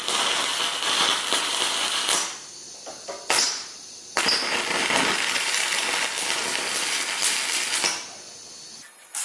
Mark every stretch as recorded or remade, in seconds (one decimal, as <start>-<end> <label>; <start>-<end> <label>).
0.0-9.2 recorded